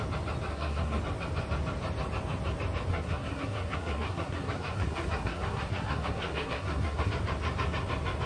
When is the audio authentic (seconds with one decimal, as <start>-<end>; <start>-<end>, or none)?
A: 0.0-0.5; 1.0-2.9; 7.1-8.3